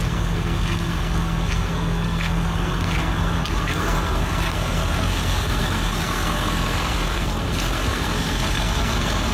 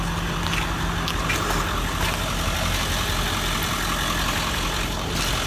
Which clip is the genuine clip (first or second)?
second